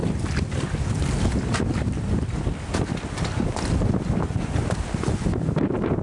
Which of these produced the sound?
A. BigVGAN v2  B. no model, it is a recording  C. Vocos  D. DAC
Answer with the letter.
B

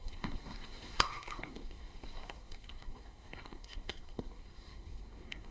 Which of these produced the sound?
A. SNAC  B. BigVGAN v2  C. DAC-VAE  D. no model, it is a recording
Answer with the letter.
A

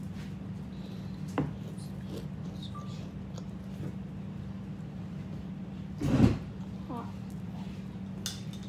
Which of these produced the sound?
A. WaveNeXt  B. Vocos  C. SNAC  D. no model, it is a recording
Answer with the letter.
D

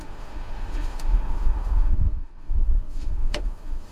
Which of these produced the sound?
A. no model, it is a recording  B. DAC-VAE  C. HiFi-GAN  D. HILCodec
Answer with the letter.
B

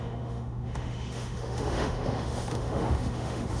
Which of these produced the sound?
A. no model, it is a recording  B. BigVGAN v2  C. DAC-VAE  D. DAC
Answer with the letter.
C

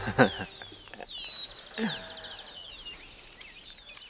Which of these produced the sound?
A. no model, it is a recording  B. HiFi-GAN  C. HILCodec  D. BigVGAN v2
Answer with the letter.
A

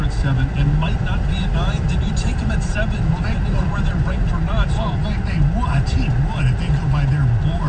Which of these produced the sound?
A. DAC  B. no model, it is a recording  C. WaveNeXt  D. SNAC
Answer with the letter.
B